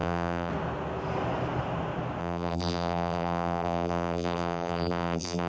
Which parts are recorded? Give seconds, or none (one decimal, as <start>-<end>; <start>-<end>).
0.5-2.2